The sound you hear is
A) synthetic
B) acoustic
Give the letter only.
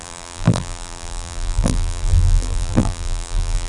A